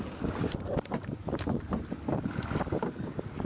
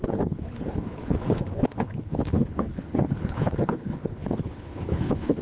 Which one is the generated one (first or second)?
second